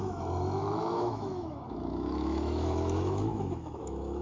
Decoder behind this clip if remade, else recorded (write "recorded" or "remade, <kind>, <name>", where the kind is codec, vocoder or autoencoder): remade, autoencoder, DAC-VAE